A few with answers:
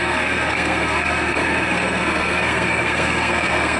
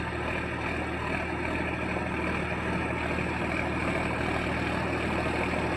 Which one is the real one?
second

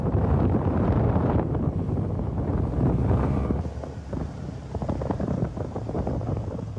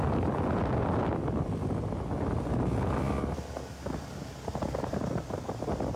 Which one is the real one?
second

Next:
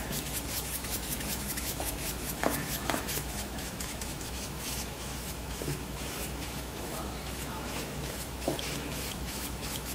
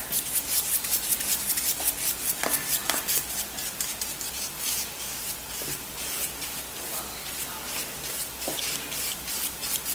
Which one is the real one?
second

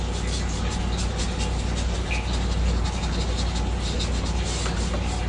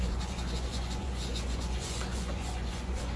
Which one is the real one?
first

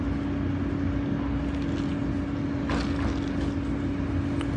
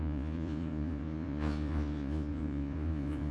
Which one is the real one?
first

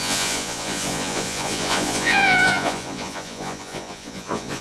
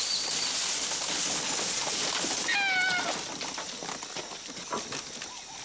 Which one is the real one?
second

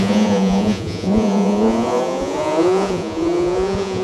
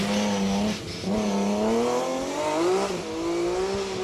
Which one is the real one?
second